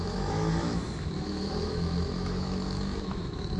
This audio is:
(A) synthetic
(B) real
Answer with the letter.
A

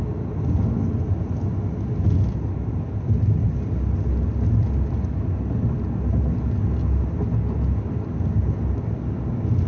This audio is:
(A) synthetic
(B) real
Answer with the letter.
B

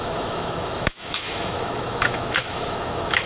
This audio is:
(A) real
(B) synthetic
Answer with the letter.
B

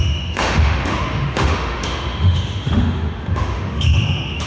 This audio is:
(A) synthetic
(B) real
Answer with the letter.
A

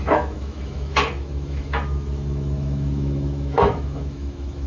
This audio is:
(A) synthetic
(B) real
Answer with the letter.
A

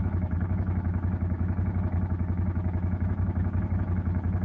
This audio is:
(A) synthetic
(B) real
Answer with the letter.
A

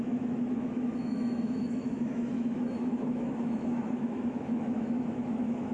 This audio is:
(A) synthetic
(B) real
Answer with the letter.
A